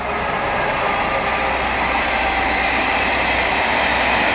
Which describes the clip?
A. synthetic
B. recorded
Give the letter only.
B